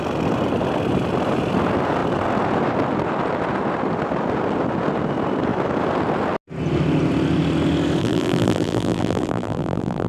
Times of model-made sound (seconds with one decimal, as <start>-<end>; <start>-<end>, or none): 8.0-10.1